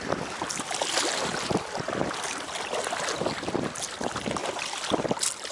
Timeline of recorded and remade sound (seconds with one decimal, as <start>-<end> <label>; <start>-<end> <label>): 0.0-5.5 recorded